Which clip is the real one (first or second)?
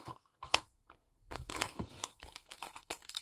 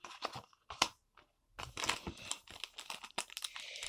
second